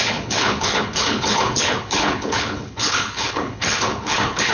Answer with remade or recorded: remade